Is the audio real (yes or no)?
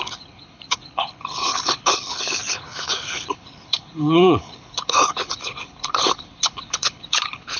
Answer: no